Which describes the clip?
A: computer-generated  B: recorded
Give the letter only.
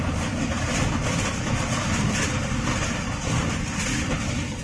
B